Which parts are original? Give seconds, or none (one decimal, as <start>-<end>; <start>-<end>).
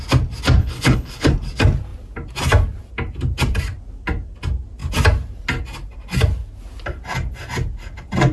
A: 0.0-0.6; 1.3-8.3